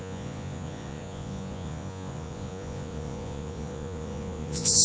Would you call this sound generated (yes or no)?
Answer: yes